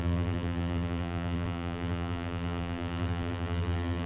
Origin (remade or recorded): remade